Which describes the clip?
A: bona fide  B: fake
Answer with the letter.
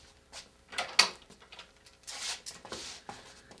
A